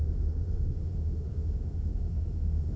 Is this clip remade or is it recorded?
remade